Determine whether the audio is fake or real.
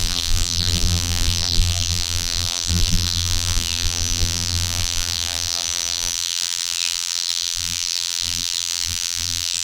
fake